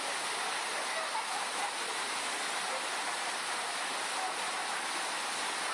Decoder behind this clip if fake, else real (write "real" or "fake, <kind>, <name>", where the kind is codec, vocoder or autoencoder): real